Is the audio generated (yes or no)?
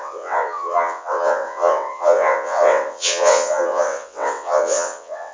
yes